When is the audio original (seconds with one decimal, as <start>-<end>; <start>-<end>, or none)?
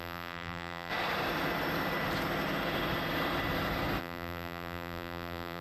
0.9-4.0